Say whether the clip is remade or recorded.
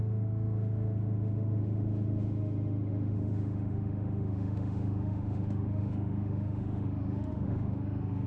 remade